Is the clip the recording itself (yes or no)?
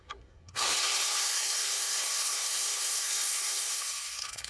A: no